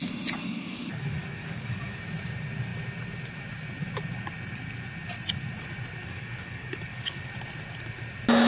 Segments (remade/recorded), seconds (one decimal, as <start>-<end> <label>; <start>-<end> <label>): 0.0-0.4 recorded; 0.4-2.0 remade; 2.0-6.0 recorded; 6.0-7.3 remade; 7.3-8.5 recorded